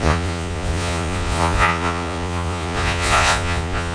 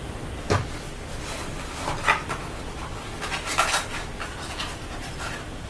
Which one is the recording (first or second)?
second